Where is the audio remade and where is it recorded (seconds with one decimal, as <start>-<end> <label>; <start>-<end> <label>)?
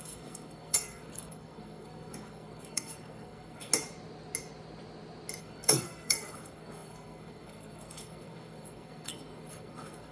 0.0-3.7 remade; 3.7-5.4 recorded; 5.4-10.1 remade